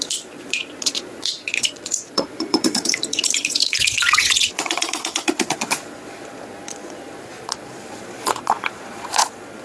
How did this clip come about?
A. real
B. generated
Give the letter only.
B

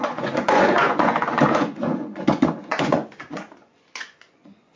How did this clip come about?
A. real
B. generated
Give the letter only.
B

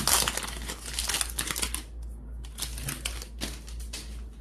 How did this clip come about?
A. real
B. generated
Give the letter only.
A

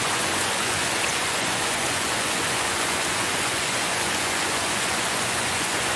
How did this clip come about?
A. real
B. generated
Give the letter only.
B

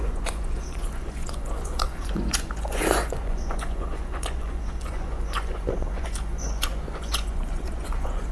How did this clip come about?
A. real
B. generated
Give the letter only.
B